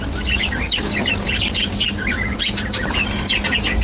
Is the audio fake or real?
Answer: real